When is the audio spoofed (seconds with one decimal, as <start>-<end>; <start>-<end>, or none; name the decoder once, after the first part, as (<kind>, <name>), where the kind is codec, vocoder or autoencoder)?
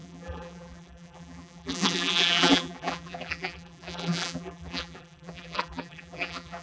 0.0-6.6 (vocoder, BigVGAN v2)